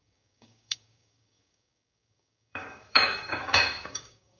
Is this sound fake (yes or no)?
yes